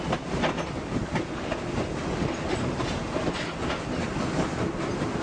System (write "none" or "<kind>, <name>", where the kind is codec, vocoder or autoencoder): none